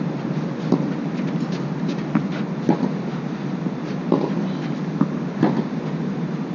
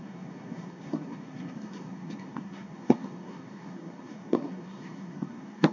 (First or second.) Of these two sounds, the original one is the first